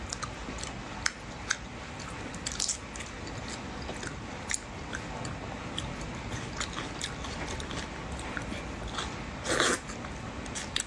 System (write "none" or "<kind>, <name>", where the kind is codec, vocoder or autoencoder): none